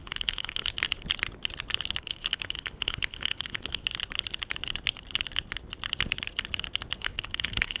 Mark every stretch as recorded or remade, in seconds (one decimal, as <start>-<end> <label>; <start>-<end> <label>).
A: 0.0-0.6 remade; 0.6-2.0 recorded; 2.0-3.8 remade; 3.8-7.0 recorded; 7.0-7.8 remade

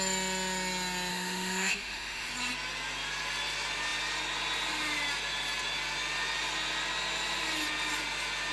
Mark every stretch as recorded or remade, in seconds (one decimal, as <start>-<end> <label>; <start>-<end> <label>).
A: 0.0-1.1 recorded; 1.1-2.3 remade; 2.3-8.5 recorded

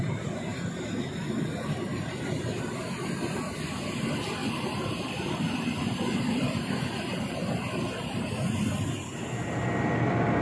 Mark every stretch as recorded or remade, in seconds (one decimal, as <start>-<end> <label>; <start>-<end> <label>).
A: 0.0-4.4 recorded; 4.4-6.8 remade; 6.8-10.4 recorded

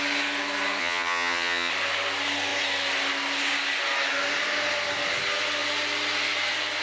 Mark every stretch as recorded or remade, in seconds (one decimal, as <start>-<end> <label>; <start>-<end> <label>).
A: 0.0-0.8 recorded; 0.8-1.7 remade; 1.7-6.8 recorded

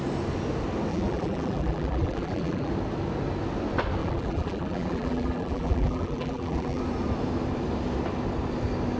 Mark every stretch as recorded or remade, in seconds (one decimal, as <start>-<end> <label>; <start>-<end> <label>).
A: 0.0-0.9 recorded; 0.9-2.7 remade; 2.7-4.0 recorded; 4.0-6.8 remade; 6.8-9.0 recorded

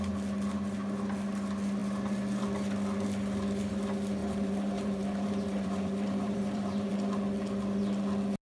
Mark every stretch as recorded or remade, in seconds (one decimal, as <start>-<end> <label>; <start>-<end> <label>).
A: 0.0-4.2 recorded; 4.2-6.9 remade; 6.9-8.4 recorded

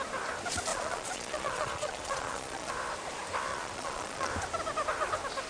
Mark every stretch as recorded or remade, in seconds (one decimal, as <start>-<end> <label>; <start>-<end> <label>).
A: 0.0-0.7 recorded; 0.7-2.7 remade; 2.7-3.5 recorded; 3.5-4.3 remade; 4.3-5.5 recorded

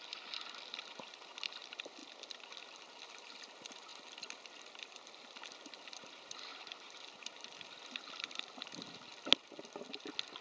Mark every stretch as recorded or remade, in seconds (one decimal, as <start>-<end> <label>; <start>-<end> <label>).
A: 0.0-6.5 recorded; 6.5-7.1 remade; 7.1-10.4 recorded